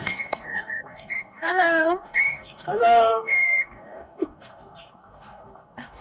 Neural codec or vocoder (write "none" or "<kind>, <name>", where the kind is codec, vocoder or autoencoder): codec, DAC